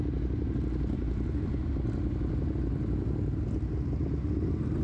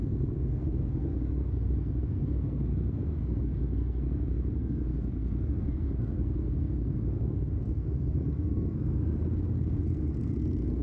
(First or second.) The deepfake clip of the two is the second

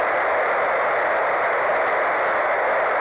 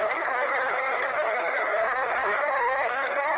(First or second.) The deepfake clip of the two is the second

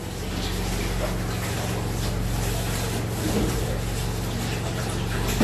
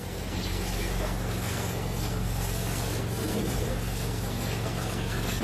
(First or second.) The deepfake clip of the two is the second